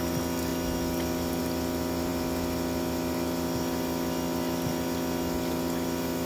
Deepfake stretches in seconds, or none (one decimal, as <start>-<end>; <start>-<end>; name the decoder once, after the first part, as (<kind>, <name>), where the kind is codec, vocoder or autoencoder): none